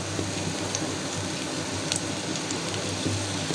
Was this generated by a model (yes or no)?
no